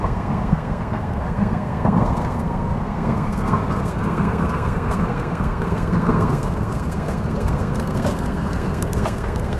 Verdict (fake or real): fake